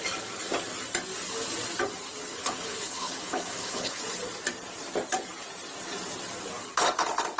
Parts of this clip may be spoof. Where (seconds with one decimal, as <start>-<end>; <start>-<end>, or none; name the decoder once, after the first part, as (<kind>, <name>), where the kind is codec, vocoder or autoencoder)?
2.3-4.0 (codec, HILCodec)